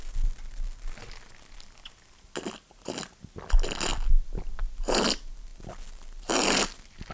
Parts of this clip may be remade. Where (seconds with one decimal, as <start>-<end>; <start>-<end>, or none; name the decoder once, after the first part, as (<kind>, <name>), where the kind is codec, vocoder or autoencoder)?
none